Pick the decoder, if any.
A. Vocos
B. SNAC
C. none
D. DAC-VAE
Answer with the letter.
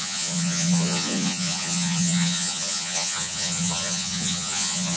A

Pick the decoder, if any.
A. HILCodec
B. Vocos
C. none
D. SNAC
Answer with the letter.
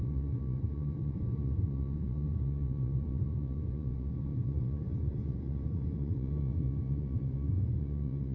B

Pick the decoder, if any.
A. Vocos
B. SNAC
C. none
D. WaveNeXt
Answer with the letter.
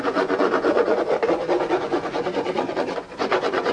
A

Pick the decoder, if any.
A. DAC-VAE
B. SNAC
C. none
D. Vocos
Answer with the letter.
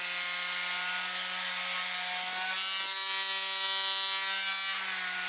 C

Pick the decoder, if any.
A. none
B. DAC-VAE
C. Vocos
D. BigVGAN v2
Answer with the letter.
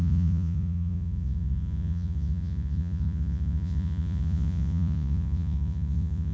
C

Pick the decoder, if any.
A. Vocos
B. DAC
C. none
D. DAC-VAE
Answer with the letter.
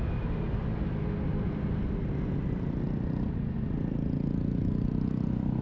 C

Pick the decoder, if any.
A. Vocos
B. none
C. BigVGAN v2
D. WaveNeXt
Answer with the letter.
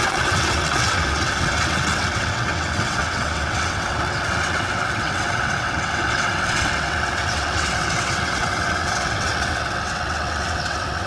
D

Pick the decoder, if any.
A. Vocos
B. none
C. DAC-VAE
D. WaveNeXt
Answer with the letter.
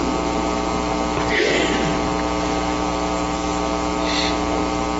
B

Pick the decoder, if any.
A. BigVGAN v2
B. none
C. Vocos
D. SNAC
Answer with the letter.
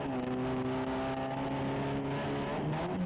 B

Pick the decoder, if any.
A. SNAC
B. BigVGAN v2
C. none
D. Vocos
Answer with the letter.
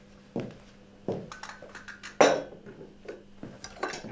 C